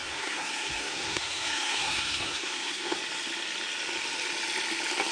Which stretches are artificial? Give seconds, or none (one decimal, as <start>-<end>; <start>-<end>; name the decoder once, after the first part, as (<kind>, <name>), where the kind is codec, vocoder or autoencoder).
0.0-3.0 (codec, SNAC)